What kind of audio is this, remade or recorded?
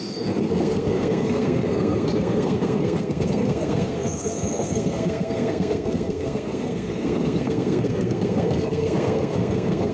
remade